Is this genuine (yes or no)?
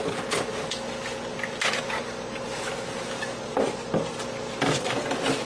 yes